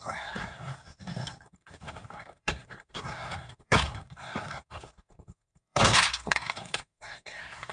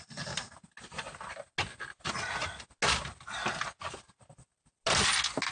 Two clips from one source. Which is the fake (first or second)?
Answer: first